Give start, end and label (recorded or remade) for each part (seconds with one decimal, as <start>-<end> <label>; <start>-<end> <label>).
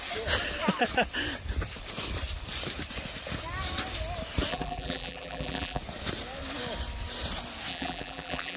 0.0-4.5 recorded; 4.5-5.8 remade; 5.8-7.7 recorded; 7.7-8.6 remade